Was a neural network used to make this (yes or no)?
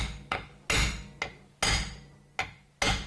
no